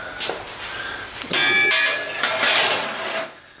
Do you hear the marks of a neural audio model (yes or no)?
no